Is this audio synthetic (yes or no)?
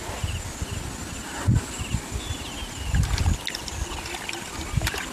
no